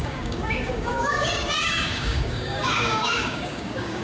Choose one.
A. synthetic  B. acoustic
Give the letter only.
A